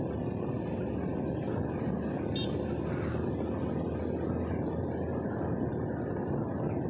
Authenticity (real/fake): real